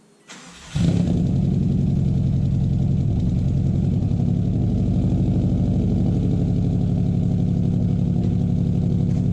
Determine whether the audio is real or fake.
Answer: real